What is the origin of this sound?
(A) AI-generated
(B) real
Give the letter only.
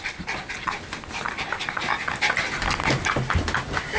B